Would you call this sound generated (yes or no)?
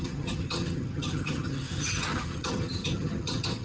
yes